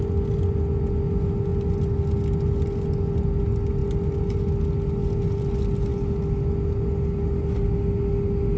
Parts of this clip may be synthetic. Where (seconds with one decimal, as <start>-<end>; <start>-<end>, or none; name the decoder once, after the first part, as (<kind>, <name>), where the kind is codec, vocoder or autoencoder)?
none